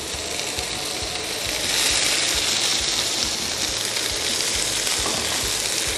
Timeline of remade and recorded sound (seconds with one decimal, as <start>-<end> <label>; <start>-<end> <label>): 0.0-6.0 recorded